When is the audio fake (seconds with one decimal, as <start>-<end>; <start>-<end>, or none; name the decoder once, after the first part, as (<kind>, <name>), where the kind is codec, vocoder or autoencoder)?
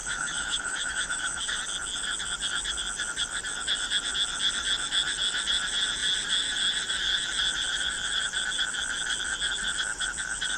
0.0-1.6 (autoencoder, DAC-VAE)